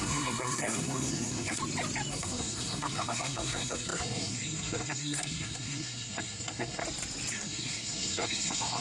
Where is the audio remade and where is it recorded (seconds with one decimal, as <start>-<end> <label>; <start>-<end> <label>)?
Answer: 0.0-1.6 remade; 1.6-2.1 recorded; 2.1-6.8 remade; 6.8-7.3 recorded; 7.3-8.8 remade

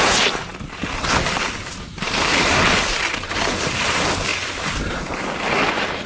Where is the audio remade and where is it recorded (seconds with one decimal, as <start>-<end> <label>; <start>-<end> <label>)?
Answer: 0.0-6.1 recorded